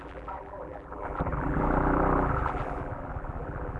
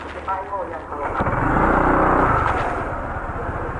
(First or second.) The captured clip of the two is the second